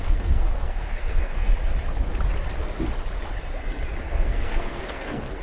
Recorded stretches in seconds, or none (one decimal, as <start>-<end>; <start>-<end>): 1.5-4.0